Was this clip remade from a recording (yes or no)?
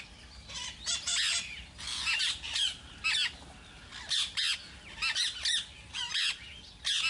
no